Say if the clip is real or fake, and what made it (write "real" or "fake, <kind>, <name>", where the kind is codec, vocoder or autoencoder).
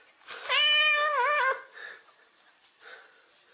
real